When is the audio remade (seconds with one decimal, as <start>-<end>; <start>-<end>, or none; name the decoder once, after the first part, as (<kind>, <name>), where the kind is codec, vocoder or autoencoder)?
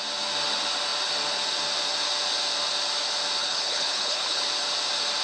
3.4-4.4 (codec, HILCodec)